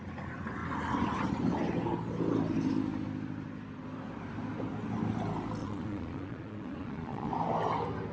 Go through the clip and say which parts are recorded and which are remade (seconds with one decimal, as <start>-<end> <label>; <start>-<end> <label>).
0.0-5.6 recorded; 5.6-7.3 remade; 7.3-8.1 recorded